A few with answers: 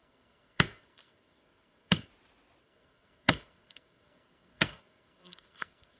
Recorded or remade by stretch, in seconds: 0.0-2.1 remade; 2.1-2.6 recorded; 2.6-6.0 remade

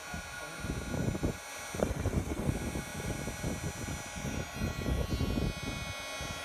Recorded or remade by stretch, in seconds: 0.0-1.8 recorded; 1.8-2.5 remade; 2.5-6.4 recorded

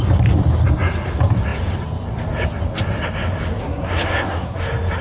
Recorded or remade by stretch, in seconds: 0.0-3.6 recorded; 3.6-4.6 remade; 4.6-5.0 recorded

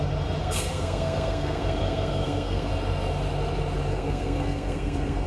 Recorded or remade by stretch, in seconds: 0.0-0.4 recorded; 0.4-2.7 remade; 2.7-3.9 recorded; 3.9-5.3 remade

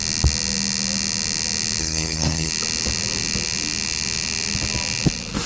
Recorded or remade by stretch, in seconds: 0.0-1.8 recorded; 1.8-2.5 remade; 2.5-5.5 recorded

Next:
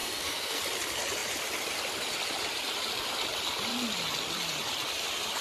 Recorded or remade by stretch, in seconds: 0.0-0.6 remade; 0.6-5.4 recorded

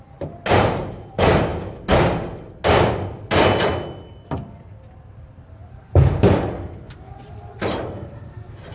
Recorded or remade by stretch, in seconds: 0.0-8.7 recorded